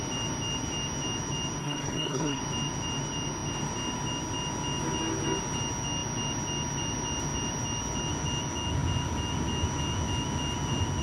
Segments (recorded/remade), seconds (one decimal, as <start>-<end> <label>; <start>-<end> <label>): 0.0-1.6 recorded; 1.6-2.4 remade; 2.4-11.0 recorded